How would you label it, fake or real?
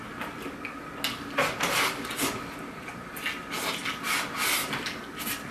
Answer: real